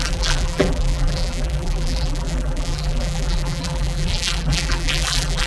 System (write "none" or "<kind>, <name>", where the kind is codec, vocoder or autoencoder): vocoder, BigVGAN v2